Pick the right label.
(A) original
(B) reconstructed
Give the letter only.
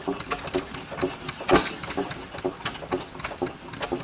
A